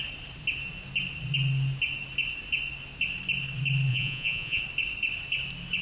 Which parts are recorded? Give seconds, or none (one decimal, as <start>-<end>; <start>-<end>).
0.0-3.9; 4.6-5.8